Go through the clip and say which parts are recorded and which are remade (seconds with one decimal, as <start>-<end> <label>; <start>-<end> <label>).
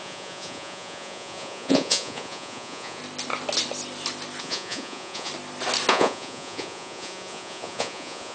0.0-3.0 remade; 3.0-4.4 recorded; 4.4-5.3 remade; 5.3-5.9 recorded; 5.9-8.3 remade